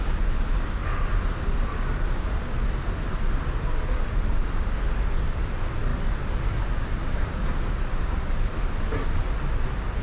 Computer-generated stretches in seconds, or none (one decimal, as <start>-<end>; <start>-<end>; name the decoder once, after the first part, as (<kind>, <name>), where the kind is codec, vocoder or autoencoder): none